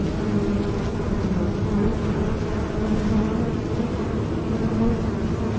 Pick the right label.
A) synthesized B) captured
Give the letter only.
B